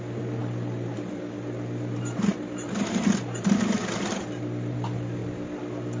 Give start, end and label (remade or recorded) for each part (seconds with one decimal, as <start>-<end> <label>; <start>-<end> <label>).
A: 0.0-6.0 recorded